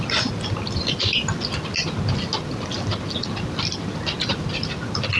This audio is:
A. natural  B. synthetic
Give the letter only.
A